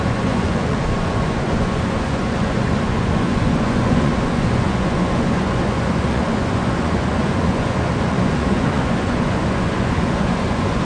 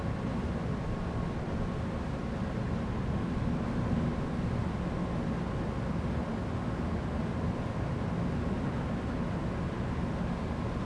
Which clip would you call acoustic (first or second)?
second